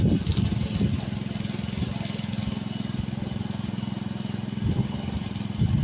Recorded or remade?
recorded